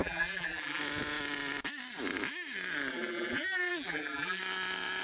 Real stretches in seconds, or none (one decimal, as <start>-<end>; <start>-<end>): 0.8-2.9; 4.4-5.0